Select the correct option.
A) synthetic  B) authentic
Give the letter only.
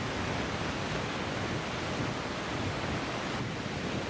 B